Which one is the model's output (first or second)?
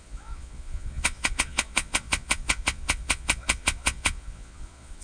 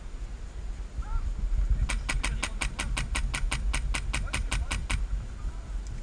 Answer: first